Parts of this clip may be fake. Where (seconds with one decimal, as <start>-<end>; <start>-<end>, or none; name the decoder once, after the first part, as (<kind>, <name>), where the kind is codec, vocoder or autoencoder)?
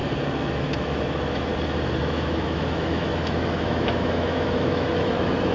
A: 0.5-1.5 (autoencoder, DAC-VAE); 2.0-5.5